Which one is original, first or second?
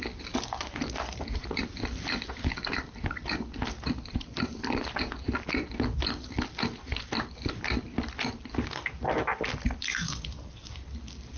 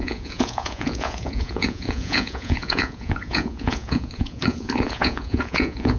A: first